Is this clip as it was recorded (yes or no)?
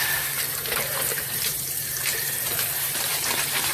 no